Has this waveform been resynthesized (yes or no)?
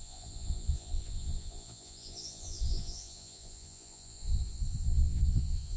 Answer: yes